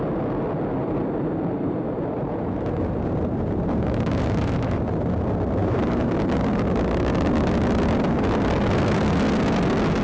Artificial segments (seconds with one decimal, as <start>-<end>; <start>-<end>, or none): 0.8-5.1; 5.6-6.1